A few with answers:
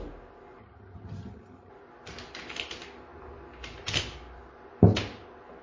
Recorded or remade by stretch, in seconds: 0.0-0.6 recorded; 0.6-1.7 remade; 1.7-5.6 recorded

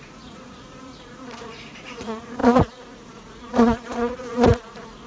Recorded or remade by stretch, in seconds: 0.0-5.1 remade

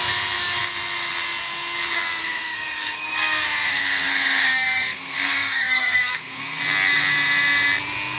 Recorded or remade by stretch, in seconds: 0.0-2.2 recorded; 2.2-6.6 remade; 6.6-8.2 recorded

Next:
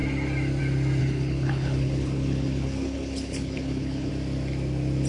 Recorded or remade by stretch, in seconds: 0.0-1.0 recorded; 1.0-4.1 remade; 4.1-5.1 recorded

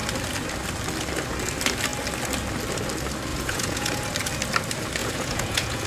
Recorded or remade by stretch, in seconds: 0.0-3.3 recorded; 3.3-4.0 remade; 4.0-5.0 recorded; 5.0-5.9 remade

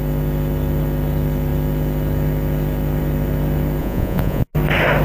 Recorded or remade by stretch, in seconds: 0.0-3.8 recorded; 3.8-4.5 remade; 4.5-5.0 recorded

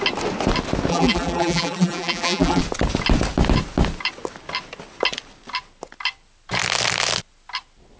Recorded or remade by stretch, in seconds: 0.0-0.9 recorded; 0.9-2.6 remade; 2.6-8.0 recorded

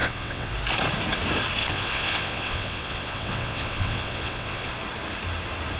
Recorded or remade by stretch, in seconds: 0.0-0.5 remade; 0.5-1.6 recorded; 1.6-4.7 remade; 4.7-5.8 recorded